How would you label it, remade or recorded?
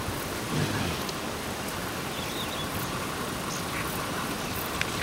recorded